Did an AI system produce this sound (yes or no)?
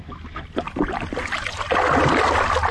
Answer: no